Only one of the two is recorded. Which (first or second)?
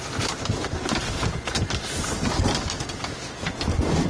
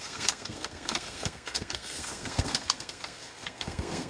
first